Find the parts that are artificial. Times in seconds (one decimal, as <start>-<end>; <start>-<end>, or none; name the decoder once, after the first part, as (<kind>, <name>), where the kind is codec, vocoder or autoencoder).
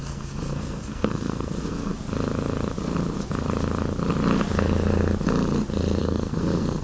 0.0-1.9 (codec, SNAC); 6.0-6.8